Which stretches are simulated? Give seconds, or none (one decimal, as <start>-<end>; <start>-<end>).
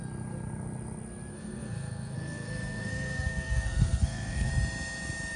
1.3-4.5